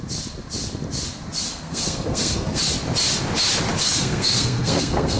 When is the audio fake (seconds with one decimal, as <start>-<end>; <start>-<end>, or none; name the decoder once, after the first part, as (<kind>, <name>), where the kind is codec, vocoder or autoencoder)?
1.5-2.6 (codec, SNAC); 3.8-5.2